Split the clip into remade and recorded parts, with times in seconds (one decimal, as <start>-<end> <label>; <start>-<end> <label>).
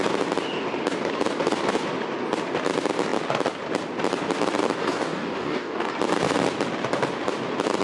0.0-4.8 recorded; 4.8-5.9 remade; 5.9-7.8 recorded